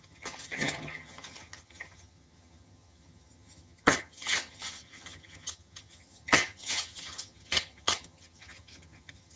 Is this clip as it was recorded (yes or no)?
no